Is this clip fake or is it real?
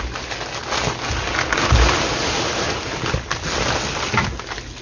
real